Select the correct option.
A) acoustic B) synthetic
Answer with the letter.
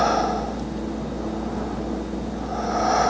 A